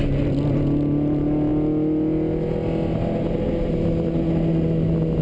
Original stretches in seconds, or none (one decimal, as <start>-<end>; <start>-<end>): 0.0-5.2